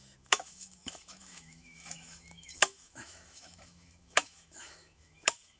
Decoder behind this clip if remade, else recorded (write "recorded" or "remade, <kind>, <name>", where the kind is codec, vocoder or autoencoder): remade, autoencoder, DAC-VAE